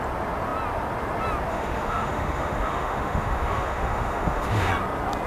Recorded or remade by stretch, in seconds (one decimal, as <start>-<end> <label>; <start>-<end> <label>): 0.0-1.5 recorded; 1.5-4.7 remade; 4.7-5.3 recorded